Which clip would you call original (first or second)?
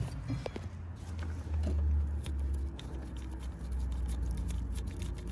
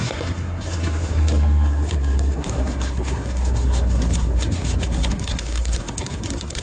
first